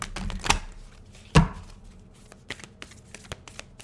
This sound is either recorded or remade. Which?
recorded